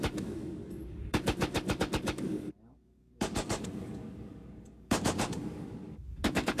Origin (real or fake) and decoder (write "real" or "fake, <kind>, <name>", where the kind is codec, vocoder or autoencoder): fake, codec, DAC